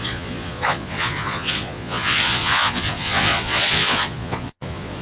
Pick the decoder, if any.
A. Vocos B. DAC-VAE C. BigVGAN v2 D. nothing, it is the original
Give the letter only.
A